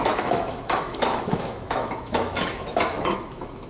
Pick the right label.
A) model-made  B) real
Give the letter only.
A